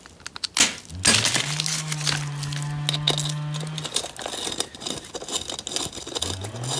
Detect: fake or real real